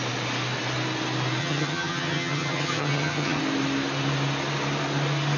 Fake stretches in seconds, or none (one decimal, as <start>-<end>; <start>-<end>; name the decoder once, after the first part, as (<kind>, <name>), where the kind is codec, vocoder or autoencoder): 1.4-3.4 (vocoder, HiFi-GAN)